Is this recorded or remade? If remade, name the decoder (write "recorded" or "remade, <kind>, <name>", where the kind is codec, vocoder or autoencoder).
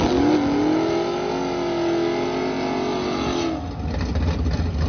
recorded